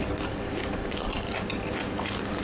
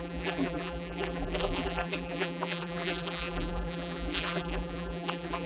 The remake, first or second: second